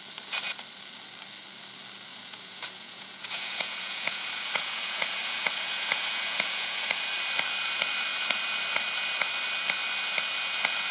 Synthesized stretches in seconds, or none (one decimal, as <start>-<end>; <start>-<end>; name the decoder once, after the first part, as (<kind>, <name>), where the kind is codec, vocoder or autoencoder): 2.1-7.0 (vocoder, Vocos)